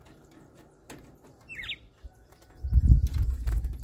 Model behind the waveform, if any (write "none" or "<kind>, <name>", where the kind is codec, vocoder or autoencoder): none